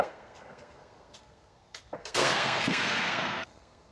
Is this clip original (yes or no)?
no